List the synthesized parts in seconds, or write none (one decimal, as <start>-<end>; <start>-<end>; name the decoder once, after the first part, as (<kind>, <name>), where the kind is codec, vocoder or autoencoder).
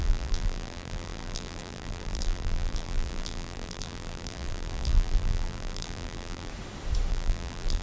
0.0-6.5 (vocoder, BigVGAN v2); 7.1-7.8